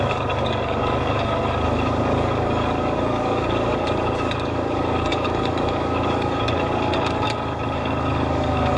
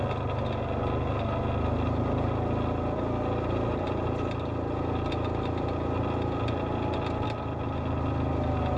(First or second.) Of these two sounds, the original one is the second